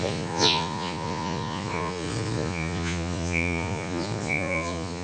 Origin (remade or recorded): remade